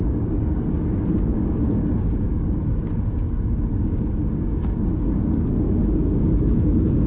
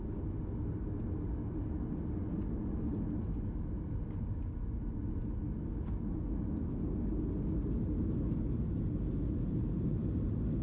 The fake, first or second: first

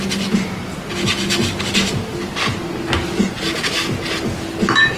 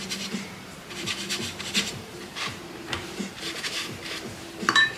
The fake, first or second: second